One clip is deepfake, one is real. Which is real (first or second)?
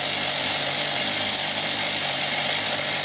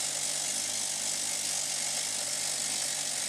second